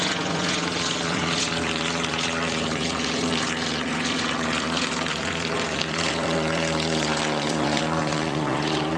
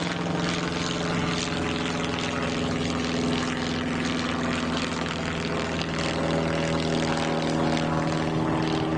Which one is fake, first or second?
first